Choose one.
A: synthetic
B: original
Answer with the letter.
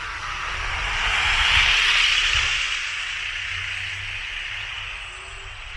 B